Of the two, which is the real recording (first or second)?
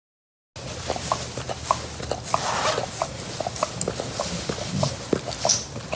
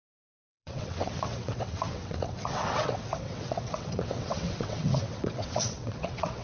first